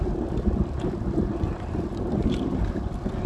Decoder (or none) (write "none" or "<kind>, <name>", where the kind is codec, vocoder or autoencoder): none